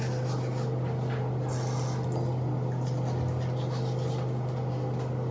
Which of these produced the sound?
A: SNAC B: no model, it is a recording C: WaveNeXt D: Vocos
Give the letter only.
B